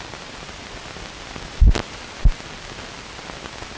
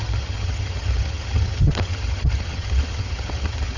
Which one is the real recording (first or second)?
first